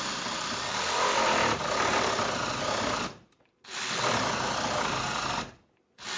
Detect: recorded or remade recorded